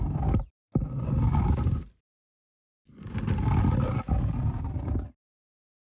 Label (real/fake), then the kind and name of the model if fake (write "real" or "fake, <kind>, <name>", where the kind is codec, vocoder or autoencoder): real